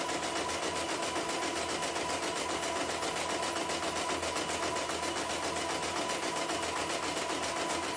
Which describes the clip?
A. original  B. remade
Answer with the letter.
A